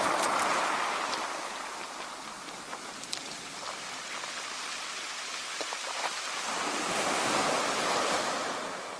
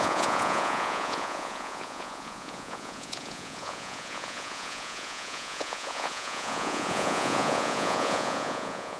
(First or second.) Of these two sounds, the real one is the first